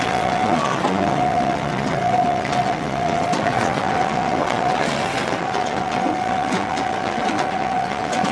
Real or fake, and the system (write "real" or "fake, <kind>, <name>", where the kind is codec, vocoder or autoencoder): fake, vocoder, WaveNeXt